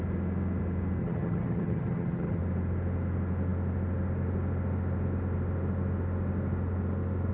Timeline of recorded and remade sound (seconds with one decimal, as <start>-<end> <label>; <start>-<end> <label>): 0.0-1.0 recorded; 1.0-2.4 remade; 2.4-7.3 recorded